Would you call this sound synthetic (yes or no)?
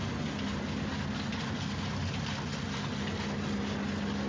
no